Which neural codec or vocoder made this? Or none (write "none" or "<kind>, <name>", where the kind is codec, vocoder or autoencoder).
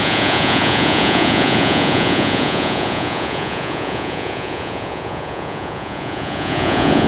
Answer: vocoder, Vocos